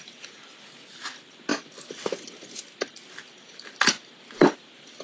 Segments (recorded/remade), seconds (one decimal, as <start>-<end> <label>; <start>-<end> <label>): 0.0-5.0 recorded

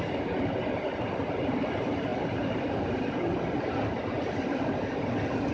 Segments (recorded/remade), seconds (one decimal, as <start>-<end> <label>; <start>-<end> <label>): 0.0-5.5 recorded

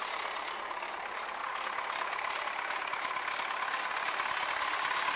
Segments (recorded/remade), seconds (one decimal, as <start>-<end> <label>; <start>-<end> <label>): 0.0-5.2 recorded

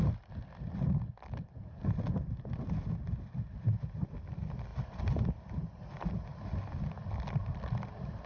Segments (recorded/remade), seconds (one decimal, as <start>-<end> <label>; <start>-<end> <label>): 0.0-8.3 recorded

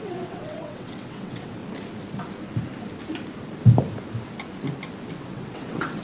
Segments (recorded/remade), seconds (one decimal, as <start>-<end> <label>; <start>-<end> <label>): 0.0-1.6 remade; 1.6-5.2 recorded; 5.2-6.0 remade